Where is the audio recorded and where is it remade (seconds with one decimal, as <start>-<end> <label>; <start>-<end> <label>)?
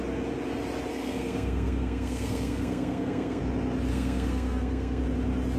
0.0-0.9 recorded; 0.9-3.4 remade; 3.4-3.9 recorded; 3.9-5.0 remade; 5.0-5.6 recorded